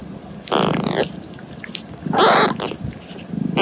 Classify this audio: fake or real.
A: real